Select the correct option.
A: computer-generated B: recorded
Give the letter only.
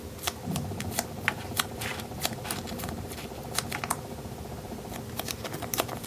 A